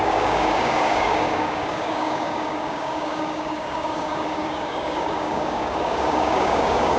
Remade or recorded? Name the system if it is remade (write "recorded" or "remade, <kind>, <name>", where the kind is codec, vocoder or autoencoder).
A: remade, codec, DAC